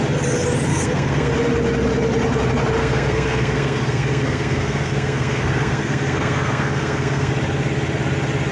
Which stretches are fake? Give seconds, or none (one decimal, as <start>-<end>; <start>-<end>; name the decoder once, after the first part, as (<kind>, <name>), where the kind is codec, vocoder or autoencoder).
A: 0.7-1.3 (codec, SNAC); 2.8-7.3